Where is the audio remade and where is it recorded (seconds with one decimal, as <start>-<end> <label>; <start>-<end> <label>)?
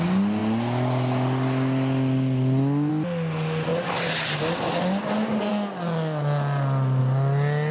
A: 0.0-7.7 recorded